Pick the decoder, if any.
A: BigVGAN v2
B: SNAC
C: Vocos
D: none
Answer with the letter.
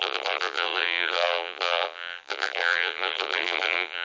A